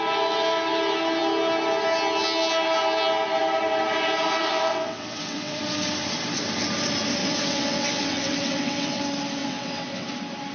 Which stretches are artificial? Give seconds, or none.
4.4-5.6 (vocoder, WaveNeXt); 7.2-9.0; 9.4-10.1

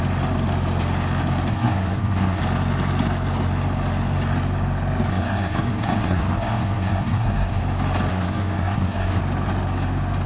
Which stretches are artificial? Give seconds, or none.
1.5-2.4 (codec, SNAC); 5.1-7.6; 8.1-9.2

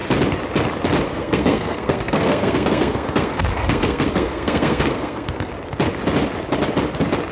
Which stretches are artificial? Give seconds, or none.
1.1-5.5 (codec, SNAC)

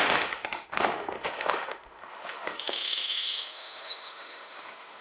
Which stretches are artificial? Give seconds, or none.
0.0-5.0 (autoencoder, DAC-VAE)

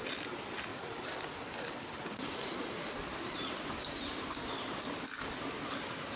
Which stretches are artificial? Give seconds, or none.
0.7-4.4 (vocoder, BigVGAN v2)

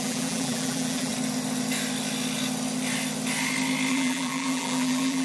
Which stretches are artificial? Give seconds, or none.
0.0-1.1 (vocoder, BigVGAN v2); 3.9-5.2